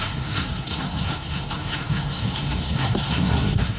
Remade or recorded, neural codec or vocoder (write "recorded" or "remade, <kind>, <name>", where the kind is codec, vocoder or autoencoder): remade, codec, SNAC